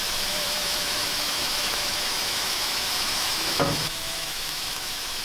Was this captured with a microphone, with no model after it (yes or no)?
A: no